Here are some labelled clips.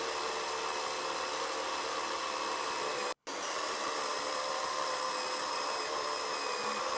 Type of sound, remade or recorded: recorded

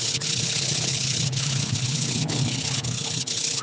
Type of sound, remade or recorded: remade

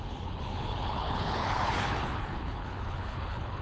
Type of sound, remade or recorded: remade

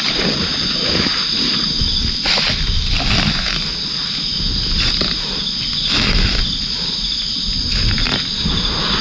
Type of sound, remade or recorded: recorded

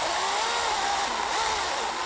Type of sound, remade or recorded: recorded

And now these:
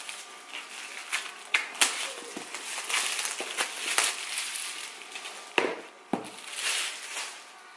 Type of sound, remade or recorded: recorded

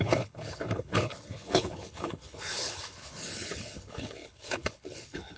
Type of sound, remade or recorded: remade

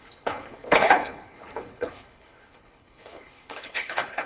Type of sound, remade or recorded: remade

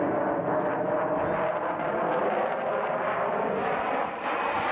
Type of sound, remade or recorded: recorded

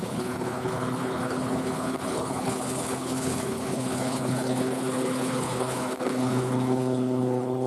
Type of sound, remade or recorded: remade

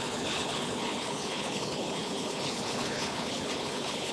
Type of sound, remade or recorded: remade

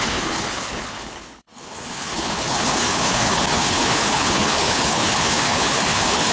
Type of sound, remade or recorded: remade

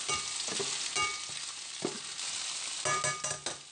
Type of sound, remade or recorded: recorded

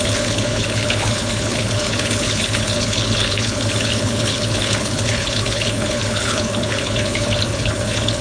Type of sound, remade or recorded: remade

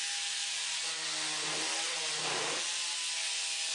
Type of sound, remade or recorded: recorded